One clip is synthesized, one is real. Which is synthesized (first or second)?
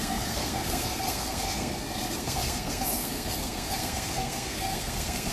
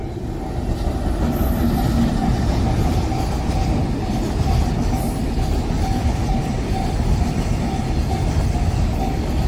first